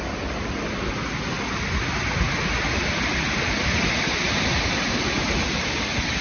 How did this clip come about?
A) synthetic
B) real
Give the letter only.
B